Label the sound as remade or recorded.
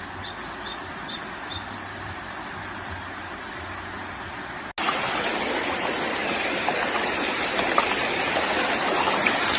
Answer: recorded